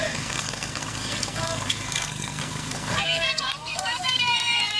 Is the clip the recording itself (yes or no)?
no